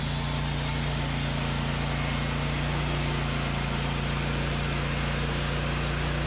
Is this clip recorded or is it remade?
recorded